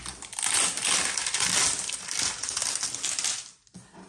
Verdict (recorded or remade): recorded